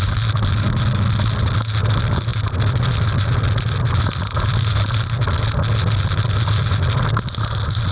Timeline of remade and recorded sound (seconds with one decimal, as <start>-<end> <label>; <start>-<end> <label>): 0.0-7.9 recorded